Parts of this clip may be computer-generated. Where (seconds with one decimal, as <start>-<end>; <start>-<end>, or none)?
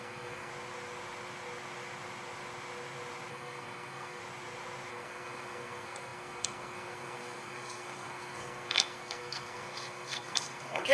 0.0-0.5; 3.3-4.2; 4.9-10.9